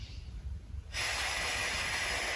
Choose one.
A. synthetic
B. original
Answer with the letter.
B